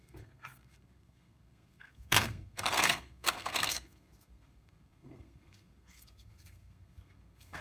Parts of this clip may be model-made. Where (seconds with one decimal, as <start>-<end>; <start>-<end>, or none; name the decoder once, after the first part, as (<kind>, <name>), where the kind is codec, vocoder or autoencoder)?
0.0-7.6 (codec, SNAC)